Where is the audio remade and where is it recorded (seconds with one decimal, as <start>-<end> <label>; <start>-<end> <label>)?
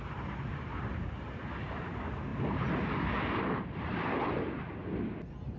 0.0-5.6 recorded